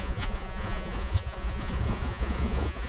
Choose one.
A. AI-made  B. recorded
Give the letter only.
A